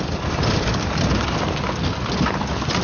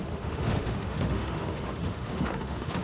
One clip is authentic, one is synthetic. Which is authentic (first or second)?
first